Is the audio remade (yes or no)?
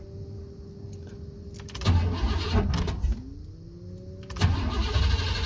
no